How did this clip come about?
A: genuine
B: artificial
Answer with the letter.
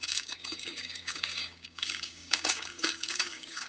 B